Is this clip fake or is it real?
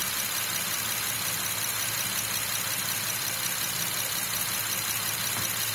real